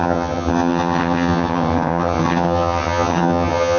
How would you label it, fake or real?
fake